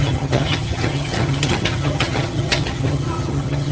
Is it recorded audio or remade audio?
remade